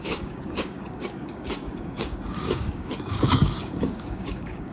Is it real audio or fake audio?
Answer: fake